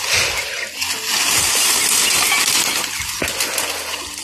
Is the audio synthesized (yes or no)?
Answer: no